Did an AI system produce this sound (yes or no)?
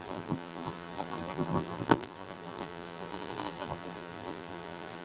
yes